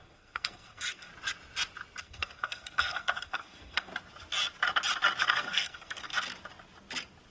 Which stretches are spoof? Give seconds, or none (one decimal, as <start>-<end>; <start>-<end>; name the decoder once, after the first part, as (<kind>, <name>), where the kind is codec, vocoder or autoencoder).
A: 0.0-1.1 (codec, SNAC); 2.0-3.9; 5.2-6.1